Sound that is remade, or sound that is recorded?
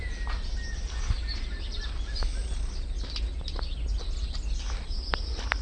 recorded